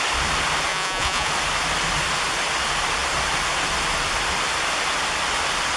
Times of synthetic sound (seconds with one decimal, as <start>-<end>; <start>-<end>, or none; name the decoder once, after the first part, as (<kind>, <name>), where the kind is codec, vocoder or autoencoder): 0.7-1.3 (vocoder, Vocos)